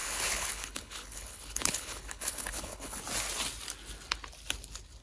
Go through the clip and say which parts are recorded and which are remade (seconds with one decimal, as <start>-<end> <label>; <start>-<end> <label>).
0.0-3.0 remade; 3.0-5.0 recorded